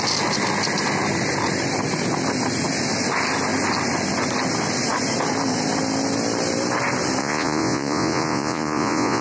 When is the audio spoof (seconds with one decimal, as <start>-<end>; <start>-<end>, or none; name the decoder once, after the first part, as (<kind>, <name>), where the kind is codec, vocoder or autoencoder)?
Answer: 7.2-9.2 (vocoder, Vocos)